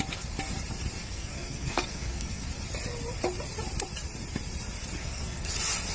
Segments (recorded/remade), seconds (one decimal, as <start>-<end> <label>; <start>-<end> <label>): 0.0-1.0 recorded; 1.0-2.5 remade; 2.5-5.0 recorded; 5.0-5.5 remade; 5.5-5.9 recorded